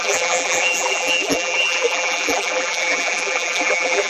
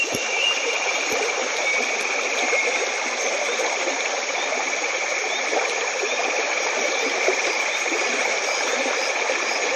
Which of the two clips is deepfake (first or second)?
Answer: first